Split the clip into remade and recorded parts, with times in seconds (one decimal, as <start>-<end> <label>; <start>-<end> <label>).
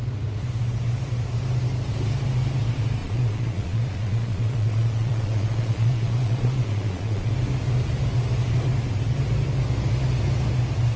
0.0-3.0 recorded; 3.0-7.3 remade; 7.3-11.0 recorded